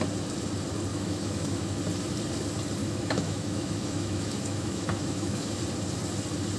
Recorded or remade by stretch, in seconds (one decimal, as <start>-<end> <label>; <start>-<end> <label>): 0.0-0.9 recorded; 0.9-1.8 remade; 1.8-2.8 recorded; 2.8-5.6 remade; 5.6-6.6 recorded